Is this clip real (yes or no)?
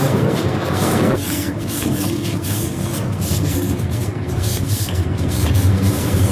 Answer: no